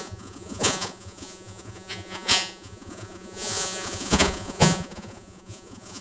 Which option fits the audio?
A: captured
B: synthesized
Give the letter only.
B